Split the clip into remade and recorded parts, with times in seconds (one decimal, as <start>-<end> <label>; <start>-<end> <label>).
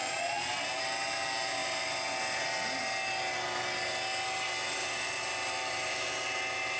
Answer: 0.0-0.5 remade; 0.5-6.8 recorded